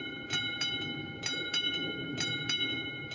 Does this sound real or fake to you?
fake